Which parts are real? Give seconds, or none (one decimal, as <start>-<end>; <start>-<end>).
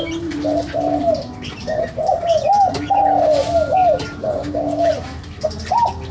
0.0-4.4; 4.9-6.1